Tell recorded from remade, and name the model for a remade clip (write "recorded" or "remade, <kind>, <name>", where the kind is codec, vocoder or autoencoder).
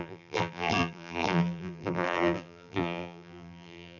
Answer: remade, vocoder, BigVGAN v2